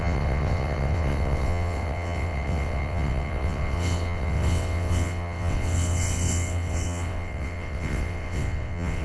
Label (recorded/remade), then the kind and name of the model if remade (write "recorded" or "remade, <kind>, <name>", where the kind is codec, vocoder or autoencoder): remade, vocoder, WaveNeXt